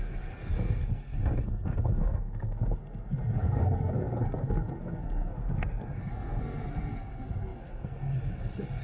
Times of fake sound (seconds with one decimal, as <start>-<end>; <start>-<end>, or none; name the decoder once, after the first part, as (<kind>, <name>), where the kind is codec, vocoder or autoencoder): 0.0-8.8 (codec, SNAC)